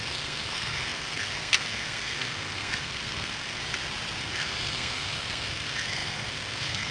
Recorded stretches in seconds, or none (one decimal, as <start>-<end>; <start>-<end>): 3.6-4.2